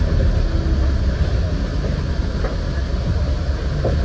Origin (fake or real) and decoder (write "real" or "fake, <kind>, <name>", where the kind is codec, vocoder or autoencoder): real